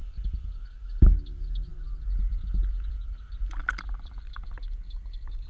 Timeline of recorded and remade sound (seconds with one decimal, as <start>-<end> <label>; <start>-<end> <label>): 0.0-5.5 recorded